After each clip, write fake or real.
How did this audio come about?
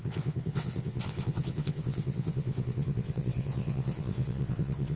fake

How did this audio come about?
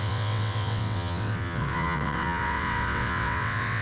fake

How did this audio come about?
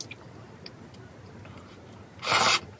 real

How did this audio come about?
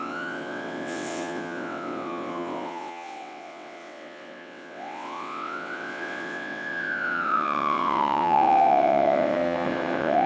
fake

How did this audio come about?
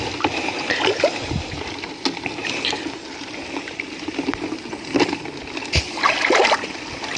real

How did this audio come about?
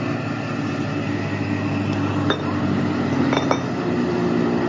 real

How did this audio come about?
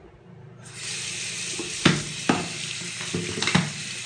real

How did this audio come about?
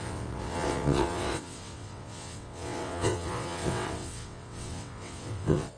fake